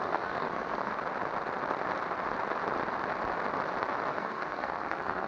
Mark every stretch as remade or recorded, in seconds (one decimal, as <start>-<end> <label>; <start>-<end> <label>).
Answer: 0.0-0.9 remade; 0.9-4.1 recorded; 4.1-5.3 remade